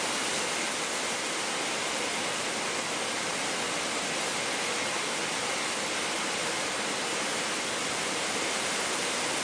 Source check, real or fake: real